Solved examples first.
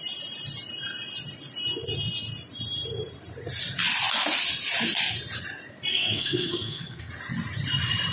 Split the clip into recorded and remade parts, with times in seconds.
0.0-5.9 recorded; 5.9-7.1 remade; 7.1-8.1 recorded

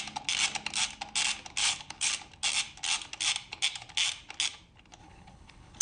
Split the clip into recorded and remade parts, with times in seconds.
0.0-1.6 recorded; 1.6-2.1 remade; 2.1-5.0 recorded; 5.0-5.8 remade

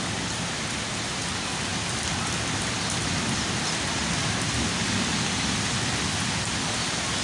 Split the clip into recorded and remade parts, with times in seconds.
0.0-7.2 recorded

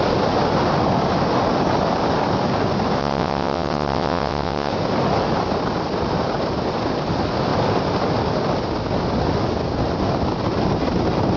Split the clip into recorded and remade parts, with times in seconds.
0.0-3.0 recorded; 3.0-4.7 remade; 4.7-11.4 recorded

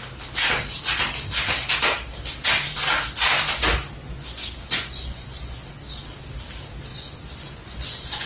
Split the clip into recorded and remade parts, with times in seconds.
0.0-4.0 recorded; 4.0-5.6 remade; 5.6-6.9 recorded; 6.9-8.3 remade

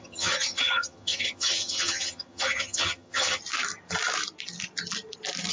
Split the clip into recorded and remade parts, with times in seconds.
0.0-3.4 remade; 3.4-5.5 recorded

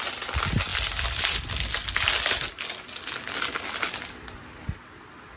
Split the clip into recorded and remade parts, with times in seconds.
0.0-5.4 recorded

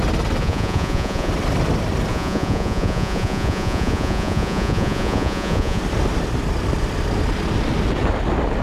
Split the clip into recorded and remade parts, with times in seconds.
0.0-0.4 recorded; 0.4-1.3 remade; 1.3-2.1 recorded; 2.1-5.8 remade; 5.8-8.6 recorded